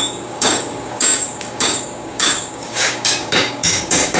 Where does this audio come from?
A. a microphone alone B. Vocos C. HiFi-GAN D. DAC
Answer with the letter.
D